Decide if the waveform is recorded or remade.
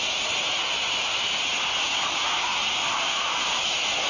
recorded